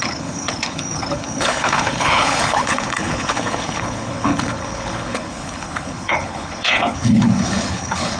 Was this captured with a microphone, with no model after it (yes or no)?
no